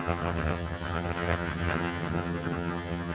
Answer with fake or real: fake